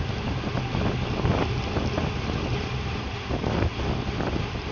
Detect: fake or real real